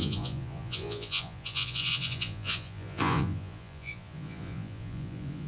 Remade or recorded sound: remade